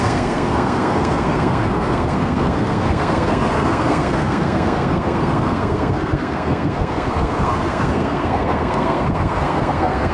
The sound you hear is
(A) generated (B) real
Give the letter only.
A